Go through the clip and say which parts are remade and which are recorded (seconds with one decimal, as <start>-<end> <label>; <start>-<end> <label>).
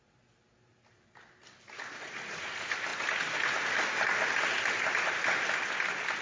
0.0-6.2 recorded